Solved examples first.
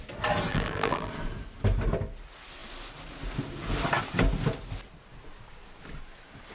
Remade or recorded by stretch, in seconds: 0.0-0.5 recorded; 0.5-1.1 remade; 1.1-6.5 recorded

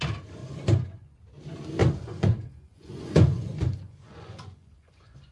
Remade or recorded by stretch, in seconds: 0.0-0.4 recorded; 0.4-1.2 remade; 1.2-1.8 recorded; 1.8-5.3 remade

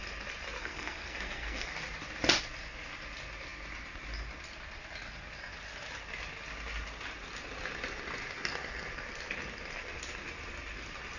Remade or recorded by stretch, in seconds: 0.0-0.6 recorded; 0.6-1.7 remade; 1.7-11.2 recorded

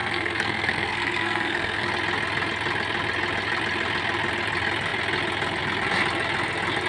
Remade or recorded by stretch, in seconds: 0.0-1.9 remade; 1.9-6.9 recorded